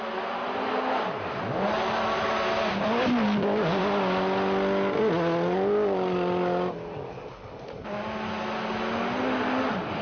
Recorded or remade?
recorded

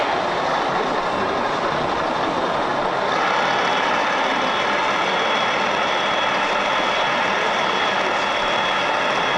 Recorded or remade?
recorded